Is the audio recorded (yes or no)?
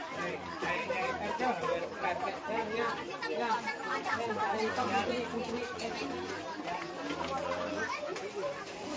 yes